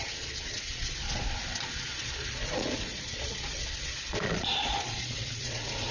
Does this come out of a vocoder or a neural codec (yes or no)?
yes